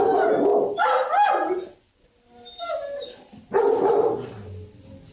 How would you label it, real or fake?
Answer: real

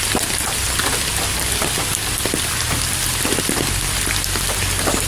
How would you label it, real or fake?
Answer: real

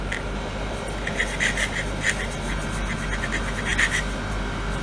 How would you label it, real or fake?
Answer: real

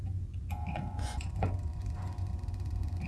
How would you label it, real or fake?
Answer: fake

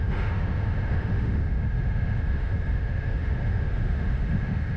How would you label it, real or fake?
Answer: fake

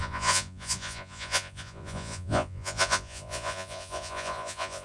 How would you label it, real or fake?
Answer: fake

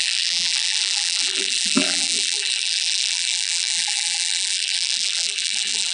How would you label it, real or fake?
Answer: fake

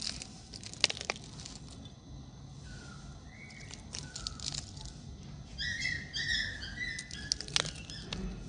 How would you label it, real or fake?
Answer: real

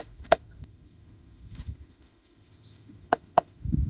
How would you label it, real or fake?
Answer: fake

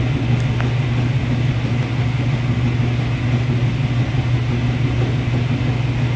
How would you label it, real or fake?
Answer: real